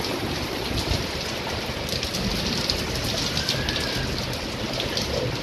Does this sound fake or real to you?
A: real